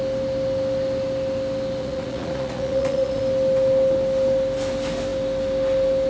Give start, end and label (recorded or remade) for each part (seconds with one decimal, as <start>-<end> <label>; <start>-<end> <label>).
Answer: 0.0-1.8 recorded; 1.8-3.2 remade; 3.2-6.1 recorded